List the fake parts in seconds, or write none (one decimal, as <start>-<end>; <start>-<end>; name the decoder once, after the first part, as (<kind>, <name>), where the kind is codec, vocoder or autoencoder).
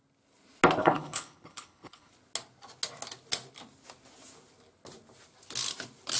0.8-2.1 (codec, HILCodec)